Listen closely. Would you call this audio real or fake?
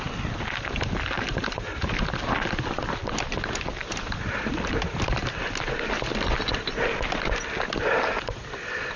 real